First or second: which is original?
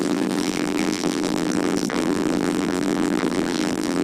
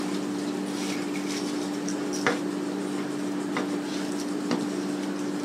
second